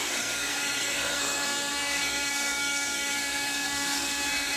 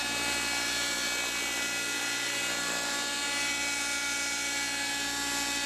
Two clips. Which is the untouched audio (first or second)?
second